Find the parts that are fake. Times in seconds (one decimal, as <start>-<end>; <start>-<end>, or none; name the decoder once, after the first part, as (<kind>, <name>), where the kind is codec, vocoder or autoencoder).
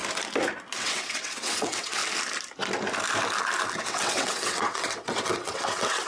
0.8-2.0 (vocoder, WaveNeXt); 3.8-6.1